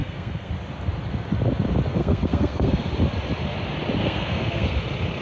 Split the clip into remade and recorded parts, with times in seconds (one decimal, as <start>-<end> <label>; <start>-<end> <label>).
0.0-0.5 remade; 0.5-1.9 recorded; 1.9-2.9 remade; 2.9-4.0 recorded; 4.0-4.8 remade; 4.8-5.2 recorded